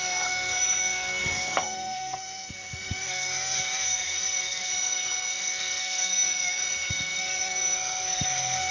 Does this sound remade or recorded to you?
remade